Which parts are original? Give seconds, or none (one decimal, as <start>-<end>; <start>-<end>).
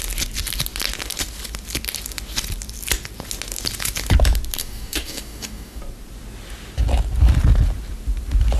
0.0-4.6; 5.8-8.6